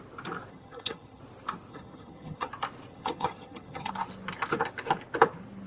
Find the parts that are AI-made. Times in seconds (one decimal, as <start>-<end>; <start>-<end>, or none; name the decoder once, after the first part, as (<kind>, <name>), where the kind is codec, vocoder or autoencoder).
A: 0.5-1.2 (vocoder, HiFi-GAN); 1.7-2.5; 2.9-3.9